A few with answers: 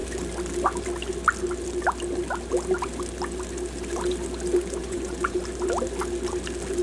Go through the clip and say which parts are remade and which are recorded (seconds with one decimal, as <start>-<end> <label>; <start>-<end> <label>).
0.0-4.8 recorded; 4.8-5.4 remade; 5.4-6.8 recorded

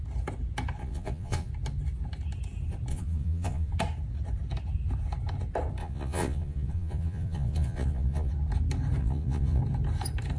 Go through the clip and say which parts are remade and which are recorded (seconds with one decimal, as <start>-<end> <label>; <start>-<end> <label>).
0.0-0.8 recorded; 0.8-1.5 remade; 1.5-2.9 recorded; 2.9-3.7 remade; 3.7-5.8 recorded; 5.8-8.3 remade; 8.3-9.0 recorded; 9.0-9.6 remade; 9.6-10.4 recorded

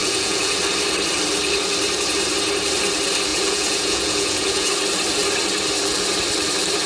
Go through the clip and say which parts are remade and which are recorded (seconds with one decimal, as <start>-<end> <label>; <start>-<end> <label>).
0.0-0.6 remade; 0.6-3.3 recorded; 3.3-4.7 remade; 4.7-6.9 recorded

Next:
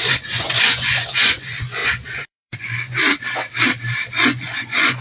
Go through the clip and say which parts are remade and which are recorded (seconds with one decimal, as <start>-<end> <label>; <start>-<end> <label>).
0.0-3.0 remade; 3.0-4.2 recorded; 4.2-5.0 remade

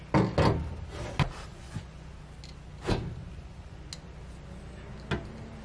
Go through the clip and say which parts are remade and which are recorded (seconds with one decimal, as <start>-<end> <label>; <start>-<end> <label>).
0.0-1.5 recorded; 1.5-2.1 remade; 2.1-3.2 recorded; 3.2-3.9 remade; 3.9-5.6 recorded

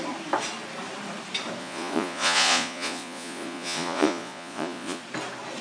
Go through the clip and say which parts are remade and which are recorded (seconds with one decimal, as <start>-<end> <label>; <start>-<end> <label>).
0.0-1.6 recorded; 1.6-5.0 remade; 5.0-5.6 recorded

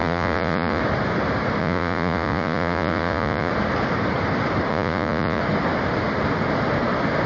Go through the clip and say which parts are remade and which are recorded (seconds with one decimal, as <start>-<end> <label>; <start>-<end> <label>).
0.0-0.8 remade; 0.8-1.6 recorded; 1.6-3.5 remade; 3.5-4.7 recorded; 4.7-5.4 remade; 5.4-7.3 recorded